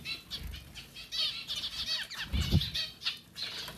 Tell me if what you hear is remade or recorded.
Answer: recorded